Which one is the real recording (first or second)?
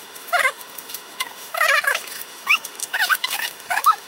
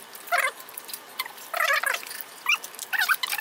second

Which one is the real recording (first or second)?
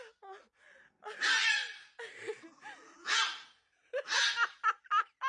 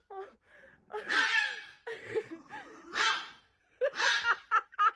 first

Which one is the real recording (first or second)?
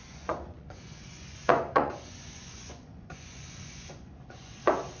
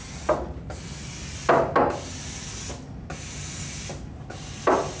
second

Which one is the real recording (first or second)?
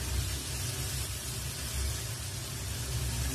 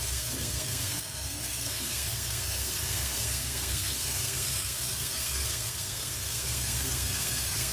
first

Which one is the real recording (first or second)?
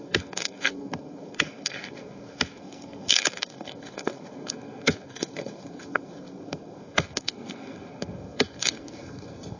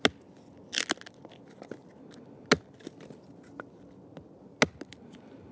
second